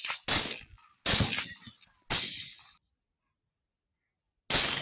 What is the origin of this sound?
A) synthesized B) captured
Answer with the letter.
B